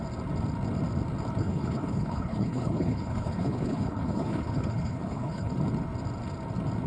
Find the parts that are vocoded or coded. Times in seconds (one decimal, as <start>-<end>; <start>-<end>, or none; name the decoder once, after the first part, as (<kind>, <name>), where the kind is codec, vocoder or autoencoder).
1.4-5.5 (codec, HILCodec)